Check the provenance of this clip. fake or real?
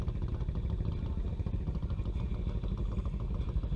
real